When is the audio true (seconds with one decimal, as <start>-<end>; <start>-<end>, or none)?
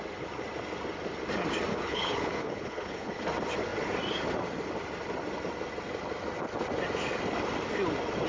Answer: 0.0-1.7; 3.2-8.3